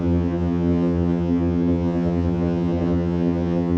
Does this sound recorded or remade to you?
remade